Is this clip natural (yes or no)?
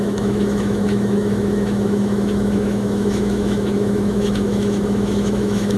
no